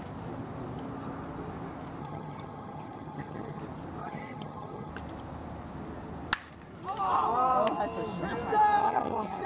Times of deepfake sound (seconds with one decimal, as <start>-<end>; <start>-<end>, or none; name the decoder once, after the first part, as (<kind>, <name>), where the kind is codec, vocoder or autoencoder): 2.0-3.6 (vocoder, HiFi-GAN); 4.0-4.9; 8.8-9.5